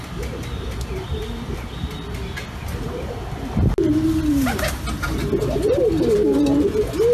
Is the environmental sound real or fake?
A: real